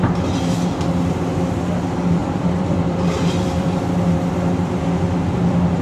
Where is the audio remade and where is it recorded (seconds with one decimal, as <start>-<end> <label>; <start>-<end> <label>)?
0.0-2.2 recorded; 2.2-3.8 remade; 3.8-5.8 recorded